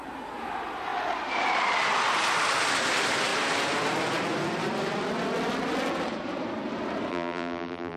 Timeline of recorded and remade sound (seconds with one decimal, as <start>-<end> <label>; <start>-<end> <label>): 0.0-7.1 recorded; 7.1-8.0 remade